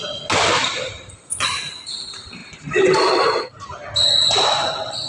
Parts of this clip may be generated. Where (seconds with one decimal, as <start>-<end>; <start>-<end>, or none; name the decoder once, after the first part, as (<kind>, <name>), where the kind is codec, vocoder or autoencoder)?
none